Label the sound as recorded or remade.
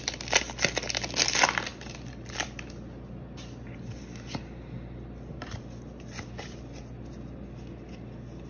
recorded